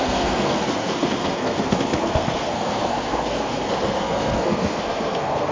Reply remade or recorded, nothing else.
remade